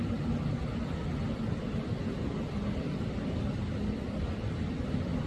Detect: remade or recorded recorded